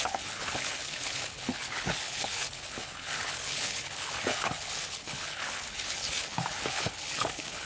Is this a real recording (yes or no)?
no